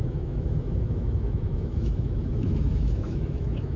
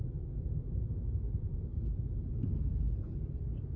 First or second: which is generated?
first